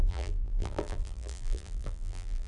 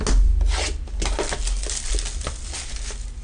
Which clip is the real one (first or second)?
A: second